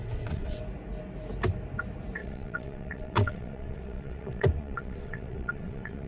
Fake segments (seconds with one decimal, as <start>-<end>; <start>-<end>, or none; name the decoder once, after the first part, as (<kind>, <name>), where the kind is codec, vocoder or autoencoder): 0.0-0.6 (vocoder, WaveNeXt); 2.2-6.1